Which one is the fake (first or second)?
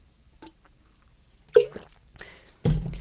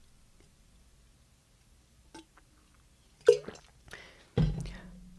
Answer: first